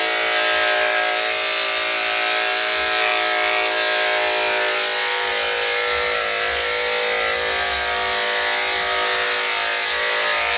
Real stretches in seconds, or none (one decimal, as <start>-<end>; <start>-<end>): 0.0-10.6